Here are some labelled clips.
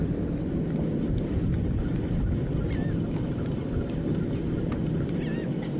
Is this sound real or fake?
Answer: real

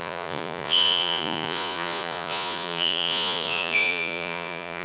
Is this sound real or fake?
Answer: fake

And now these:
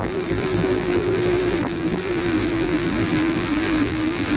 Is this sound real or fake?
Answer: fake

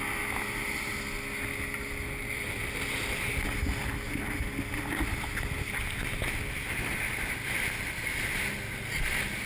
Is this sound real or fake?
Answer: real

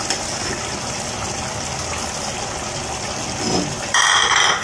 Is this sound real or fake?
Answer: real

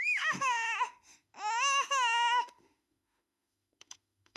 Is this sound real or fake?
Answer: fake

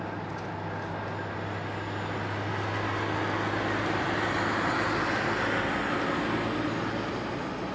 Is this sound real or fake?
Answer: real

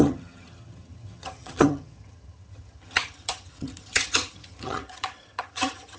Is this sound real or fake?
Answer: fake